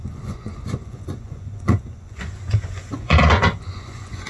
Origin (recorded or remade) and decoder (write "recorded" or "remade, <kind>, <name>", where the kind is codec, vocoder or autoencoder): remade, vocoder, Vocos